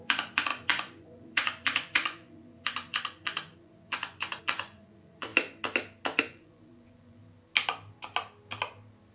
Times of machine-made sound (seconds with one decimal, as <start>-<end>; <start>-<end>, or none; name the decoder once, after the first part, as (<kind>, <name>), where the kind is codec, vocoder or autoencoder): 0.0-5.3 (vocoder, Vocos); 6.2-7.2